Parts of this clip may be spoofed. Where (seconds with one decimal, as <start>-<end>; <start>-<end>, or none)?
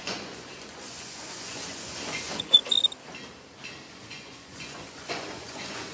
0.0-2.6; 3.9-5.9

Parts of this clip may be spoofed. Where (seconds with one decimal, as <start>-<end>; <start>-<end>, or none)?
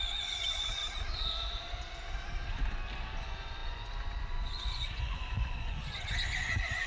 0.0-0.8; 3.2-6.9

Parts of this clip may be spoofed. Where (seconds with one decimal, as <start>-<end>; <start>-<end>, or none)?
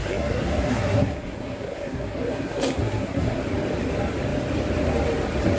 0.0-3.4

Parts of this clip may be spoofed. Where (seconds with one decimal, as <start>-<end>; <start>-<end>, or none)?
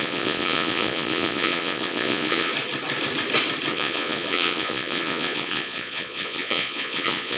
0.0-2.5; 3.7-7.4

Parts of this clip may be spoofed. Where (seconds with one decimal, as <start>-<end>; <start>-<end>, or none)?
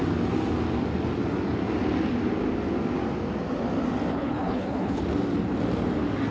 4.1-5.0